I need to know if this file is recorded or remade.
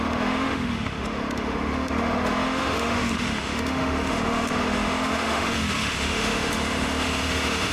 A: remade